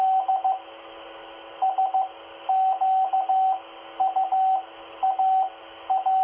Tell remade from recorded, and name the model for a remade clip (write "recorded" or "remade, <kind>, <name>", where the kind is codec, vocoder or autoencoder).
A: recorded